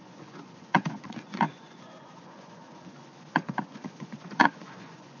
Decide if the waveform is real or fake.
fake